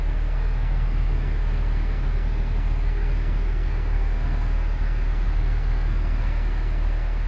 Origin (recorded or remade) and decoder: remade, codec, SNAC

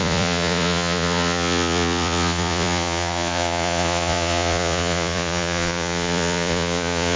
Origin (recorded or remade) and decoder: remade, vocoder, Vocos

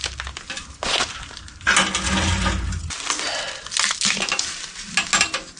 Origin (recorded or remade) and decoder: recorded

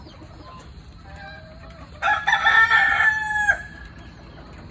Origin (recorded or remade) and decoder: recorded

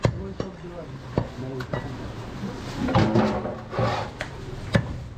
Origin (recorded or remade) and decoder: recorded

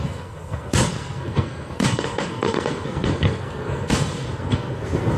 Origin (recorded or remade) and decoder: remade, codec, SNAC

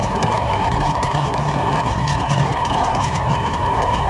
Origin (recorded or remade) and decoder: remade, codec, SNAC